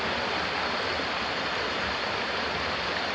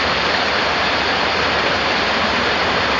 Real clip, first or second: first